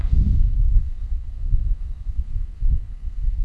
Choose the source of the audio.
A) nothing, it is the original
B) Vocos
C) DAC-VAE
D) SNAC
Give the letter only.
D